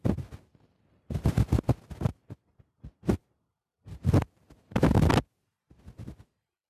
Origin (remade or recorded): recorded